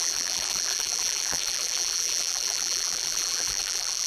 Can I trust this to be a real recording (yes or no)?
no